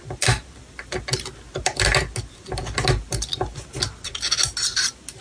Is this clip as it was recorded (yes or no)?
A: yes